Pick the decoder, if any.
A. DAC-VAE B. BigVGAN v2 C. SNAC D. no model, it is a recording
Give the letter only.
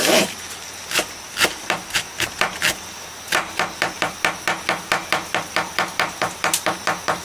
B